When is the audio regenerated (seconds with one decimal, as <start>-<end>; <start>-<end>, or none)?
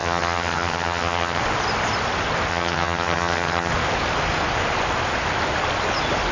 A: 0.0-1.4; 2.5-3.7